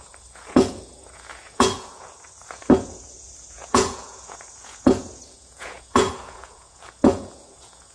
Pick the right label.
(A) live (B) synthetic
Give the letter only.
B